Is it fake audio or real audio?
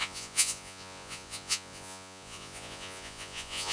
fake